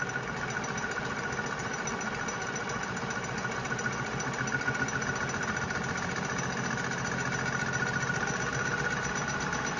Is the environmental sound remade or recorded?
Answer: recorded